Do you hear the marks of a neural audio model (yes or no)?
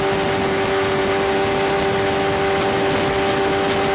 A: no